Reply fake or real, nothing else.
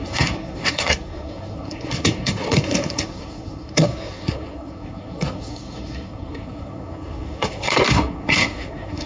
fake